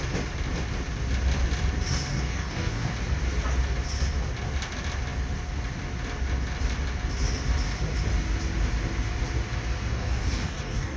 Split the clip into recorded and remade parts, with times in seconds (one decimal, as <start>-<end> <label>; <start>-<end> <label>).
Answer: 0.0-2.1 recorded; 2.1-2.9 remade; 2.9-9.9 recorded; 9.9-11.0 remade